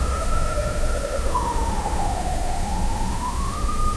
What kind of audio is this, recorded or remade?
remade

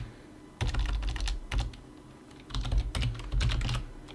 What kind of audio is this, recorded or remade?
recorded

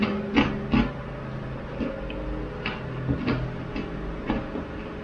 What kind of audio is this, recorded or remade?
recorded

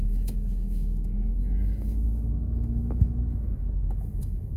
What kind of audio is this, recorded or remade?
remade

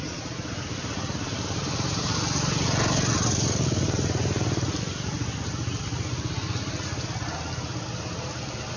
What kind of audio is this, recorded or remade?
recorded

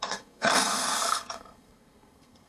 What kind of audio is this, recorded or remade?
remade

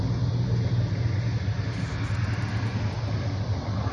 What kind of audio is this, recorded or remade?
recorded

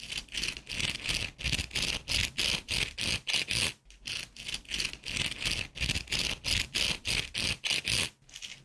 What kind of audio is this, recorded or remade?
recorded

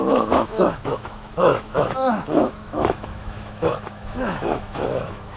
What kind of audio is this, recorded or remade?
remade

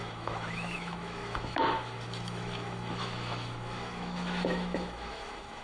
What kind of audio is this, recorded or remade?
remade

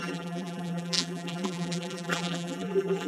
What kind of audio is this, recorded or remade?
remade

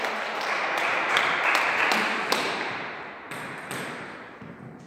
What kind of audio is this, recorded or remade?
remade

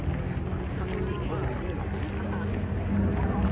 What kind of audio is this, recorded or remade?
recorded